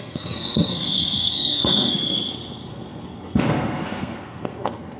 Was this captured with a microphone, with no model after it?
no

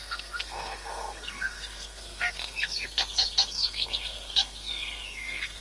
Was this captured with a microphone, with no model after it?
no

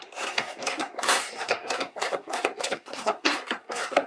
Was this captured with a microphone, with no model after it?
no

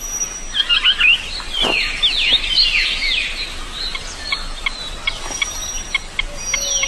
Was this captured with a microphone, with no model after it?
yes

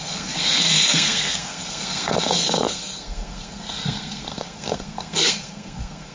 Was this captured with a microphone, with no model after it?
no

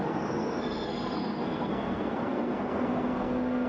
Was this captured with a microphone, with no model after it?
no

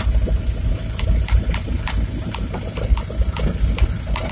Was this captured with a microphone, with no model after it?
yes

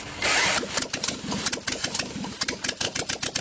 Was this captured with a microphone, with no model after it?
yes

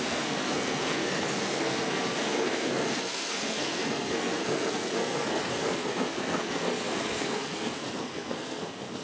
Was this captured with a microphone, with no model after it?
no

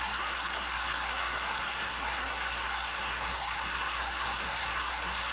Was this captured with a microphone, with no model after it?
no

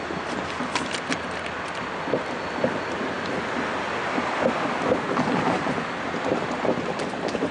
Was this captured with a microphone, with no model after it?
yes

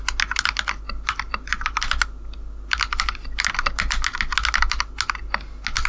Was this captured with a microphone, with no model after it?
yes